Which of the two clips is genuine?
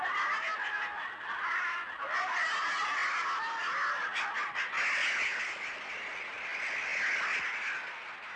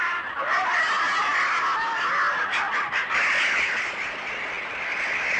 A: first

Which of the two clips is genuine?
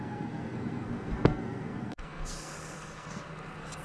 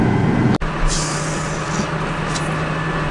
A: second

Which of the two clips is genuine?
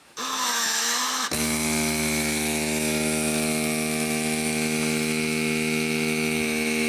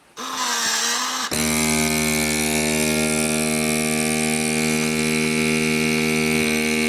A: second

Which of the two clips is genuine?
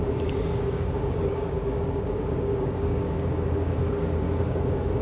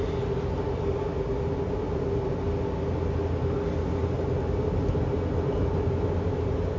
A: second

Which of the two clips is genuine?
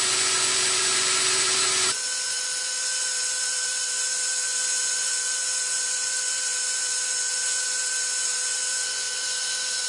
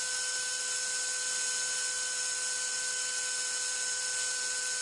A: second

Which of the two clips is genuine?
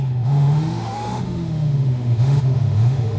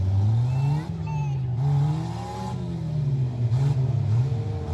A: second